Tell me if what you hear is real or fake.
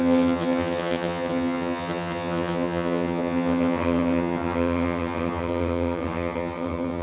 fake